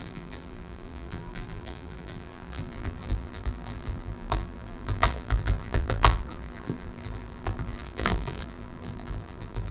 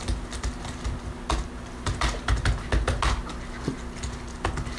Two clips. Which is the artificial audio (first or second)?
first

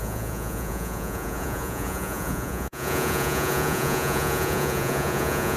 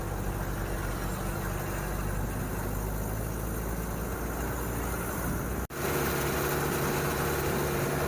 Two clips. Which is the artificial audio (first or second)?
first